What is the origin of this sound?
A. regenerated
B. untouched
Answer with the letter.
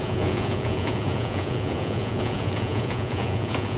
A